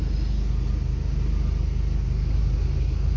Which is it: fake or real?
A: real